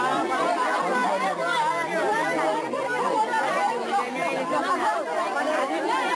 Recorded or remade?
recorded